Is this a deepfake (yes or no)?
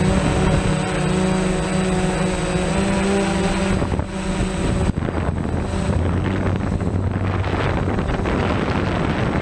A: no